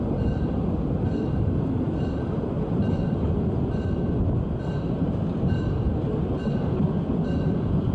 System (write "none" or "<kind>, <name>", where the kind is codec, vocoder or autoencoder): none